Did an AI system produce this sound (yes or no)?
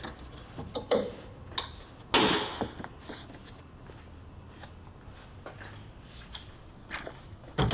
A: no